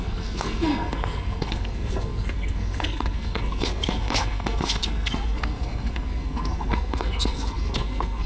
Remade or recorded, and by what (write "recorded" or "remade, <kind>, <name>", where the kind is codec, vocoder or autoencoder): remade, codec, SNAC